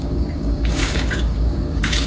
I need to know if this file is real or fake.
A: fake